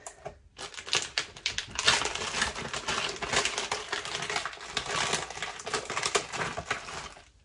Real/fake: real